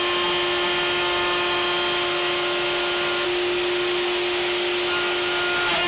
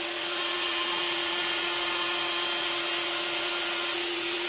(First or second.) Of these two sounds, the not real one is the second